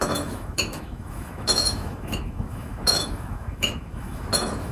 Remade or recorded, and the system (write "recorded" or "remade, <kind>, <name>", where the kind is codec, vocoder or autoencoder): remade, autoencoder, DAC-VAE